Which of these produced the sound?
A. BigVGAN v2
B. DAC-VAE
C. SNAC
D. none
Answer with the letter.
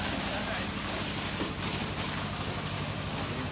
D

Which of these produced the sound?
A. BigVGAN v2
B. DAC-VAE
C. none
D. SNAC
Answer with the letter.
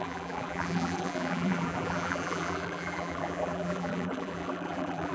A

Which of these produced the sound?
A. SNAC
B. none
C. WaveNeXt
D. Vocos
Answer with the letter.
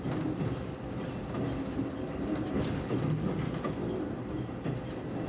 B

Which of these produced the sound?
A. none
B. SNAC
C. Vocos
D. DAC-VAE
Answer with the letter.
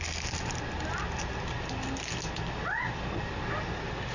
A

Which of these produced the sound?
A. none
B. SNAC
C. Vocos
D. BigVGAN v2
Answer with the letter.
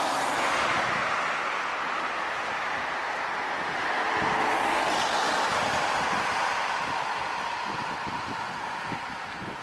A